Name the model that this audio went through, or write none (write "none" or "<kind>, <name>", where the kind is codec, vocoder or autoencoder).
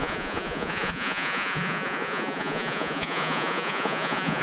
vocoder, Vocos